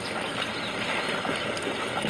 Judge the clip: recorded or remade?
recorded